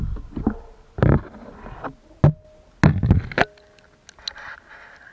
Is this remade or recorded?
recorded